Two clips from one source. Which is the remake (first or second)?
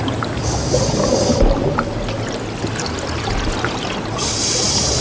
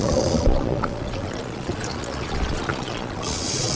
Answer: second